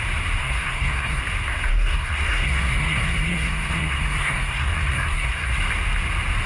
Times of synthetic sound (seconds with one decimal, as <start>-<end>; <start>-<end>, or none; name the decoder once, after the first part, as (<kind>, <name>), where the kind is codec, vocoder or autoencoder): 0.4-1.2 (codec, SNAC); 1.7-5.6